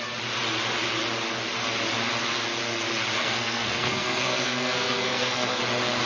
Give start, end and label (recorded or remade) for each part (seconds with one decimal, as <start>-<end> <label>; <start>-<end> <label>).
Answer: 0.0-3.2 recorded; 3.2-5.6 remade; 5.6-6.1 recorded